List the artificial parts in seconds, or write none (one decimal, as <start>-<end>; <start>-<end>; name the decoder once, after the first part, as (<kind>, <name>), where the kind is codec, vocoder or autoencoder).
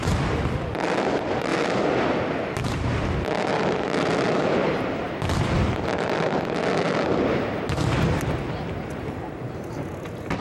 0.0-1.5 (vocoder, BigVGAN v2); 2.2-3.5; 4.5-10.4